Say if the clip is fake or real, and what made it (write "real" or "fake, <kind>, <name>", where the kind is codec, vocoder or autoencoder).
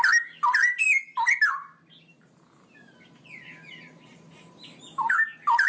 real